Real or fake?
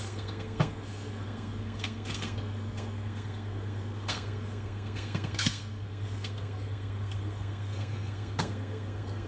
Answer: fake